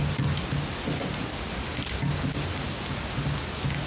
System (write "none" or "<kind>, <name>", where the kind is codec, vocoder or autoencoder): none